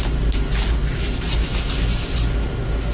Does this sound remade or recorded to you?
recorded